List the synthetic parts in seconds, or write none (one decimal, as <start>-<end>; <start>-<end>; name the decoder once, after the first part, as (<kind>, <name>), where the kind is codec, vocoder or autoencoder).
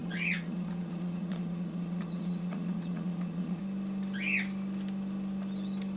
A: 0.0-3.6 (vocoder, Vocos)